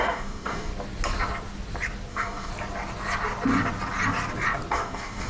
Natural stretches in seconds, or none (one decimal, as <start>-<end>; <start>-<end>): 0.7-2.1; 2.5-4.7